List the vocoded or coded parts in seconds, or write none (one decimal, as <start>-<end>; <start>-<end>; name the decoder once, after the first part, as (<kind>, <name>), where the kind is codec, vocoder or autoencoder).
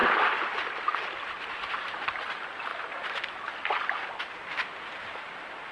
none